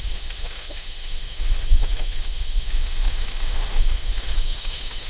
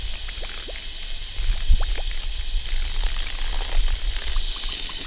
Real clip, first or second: second